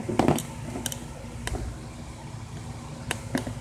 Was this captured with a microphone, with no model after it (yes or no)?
yes